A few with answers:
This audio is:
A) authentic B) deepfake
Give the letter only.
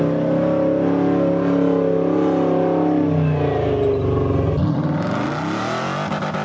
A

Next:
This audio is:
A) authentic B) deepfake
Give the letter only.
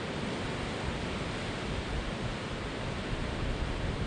A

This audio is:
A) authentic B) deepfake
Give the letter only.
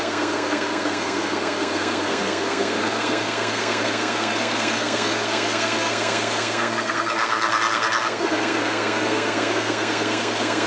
B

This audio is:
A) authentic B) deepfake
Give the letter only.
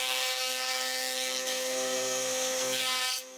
B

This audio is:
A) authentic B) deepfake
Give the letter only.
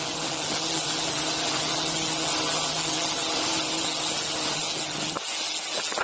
A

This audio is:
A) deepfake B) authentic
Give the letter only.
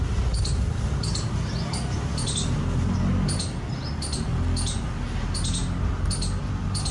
B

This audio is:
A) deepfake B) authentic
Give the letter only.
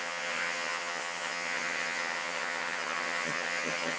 A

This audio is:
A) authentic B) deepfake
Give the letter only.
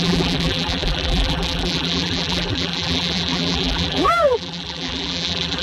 B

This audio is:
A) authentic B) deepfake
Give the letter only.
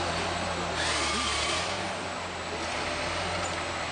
A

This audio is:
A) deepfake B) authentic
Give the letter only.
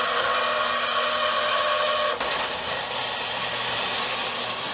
B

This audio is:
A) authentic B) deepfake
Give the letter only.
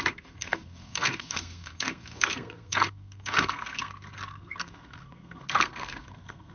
B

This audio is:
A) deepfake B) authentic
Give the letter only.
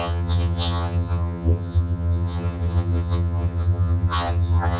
A